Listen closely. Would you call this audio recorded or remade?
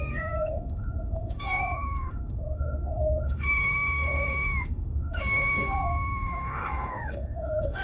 remade